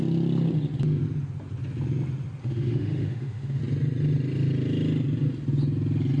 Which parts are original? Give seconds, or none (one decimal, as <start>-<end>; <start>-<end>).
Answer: 0.0-2.4; 3.6-6.2